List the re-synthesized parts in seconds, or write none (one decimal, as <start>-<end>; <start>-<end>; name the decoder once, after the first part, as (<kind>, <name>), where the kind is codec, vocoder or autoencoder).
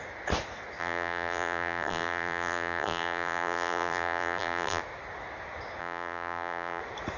0.8-4.8 (vocoder, BigVGAN v2); 5.8-6.8